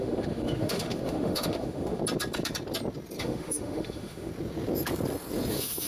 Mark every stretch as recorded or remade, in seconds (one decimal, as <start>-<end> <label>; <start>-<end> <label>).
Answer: 0.0-2.0 remade; 2.0-3.2 recorded; 3.2-4.3 remade; 4.3-5.5 recorded; 5.5-5.9 remade